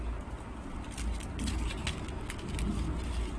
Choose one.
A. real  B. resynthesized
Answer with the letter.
A